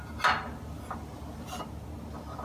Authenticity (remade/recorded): recorded